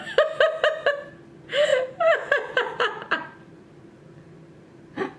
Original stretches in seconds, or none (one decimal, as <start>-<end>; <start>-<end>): 0.0-1.7; 4.8-5.2